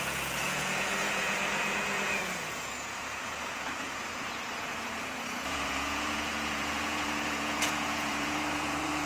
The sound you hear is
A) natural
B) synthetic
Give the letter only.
B